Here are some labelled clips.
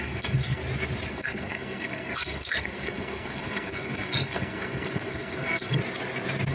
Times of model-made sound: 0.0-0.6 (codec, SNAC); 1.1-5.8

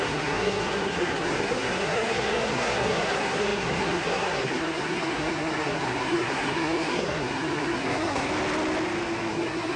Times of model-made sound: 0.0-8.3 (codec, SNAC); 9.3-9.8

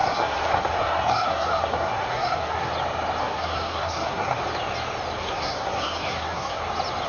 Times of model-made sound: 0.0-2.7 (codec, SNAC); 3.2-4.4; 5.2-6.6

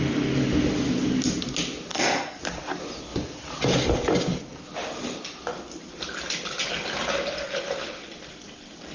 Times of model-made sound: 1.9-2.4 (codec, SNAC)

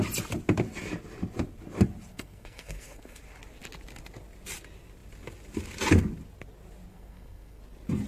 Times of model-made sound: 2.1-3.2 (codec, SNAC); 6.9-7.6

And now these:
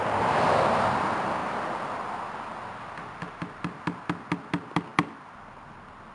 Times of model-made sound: none

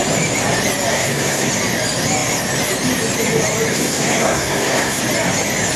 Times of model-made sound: 0.9-1.5 (codec, SNAC); 3.7-5.0